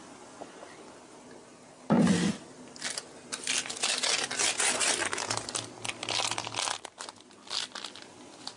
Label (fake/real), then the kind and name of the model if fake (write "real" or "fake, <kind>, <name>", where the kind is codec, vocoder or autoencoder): real